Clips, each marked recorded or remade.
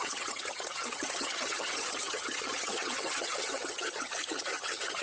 remade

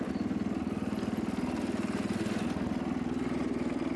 recorded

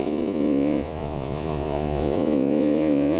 remade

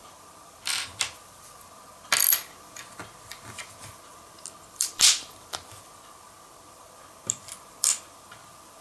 remade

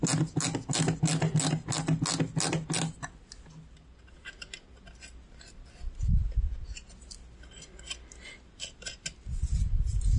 recorded